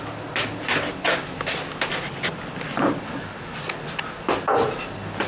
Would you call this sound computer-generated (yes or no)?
no